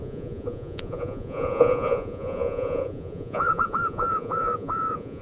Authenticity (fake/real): fake